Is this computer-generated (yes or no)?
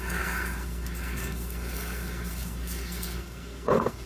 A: yes